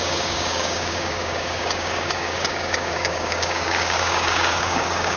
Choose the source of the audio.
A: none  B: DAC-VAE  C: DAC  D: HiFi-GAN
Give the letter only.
C